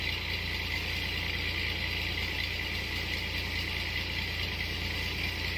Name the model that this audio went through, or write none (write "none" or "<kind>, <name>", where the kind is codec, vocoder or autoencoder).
none